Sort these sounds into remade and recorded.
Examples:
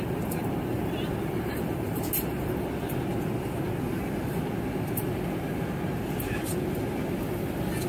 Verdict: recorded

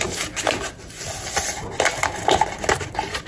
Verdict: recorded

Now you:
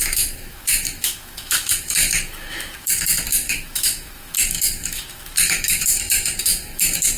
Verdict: remade